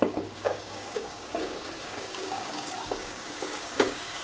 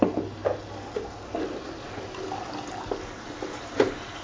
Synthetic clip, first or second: first